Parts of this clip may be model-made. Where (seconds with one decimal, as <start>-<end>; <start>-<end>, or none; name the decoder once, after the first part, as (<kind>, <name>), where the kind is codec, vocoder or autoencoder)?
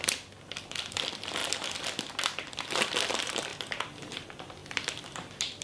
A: 0.0-1.4 (vocoder, BigVGAN v2); 2.1-3.5; 4.1-5.6